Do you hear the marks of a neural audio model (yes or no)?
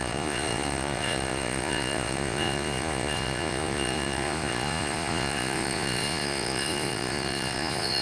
yes